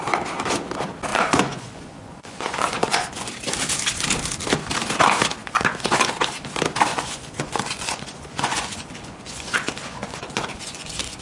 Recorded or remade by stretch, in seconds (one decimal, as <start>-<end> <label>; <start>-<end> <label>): 0.0-1.1 recorded; 1.1-3.3 remade; 3.3-5.4 recorded; 5.4-6.0 remade; 6.0-6.9 recorded; 6.9-11.2 remade